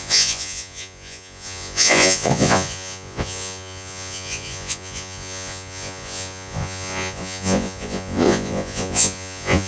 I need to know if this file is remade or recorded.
remade